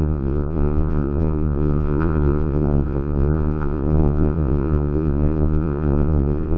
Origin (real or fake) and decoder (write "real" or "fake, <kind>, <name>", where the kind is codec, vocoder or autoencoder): fake, vocoder, Vocos